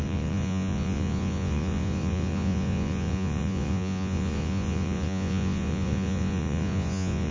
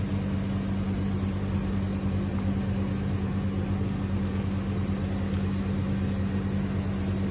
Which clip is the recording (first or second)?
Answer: second